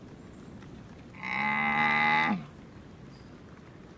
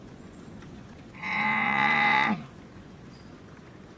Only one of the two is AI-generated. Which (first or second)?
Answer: second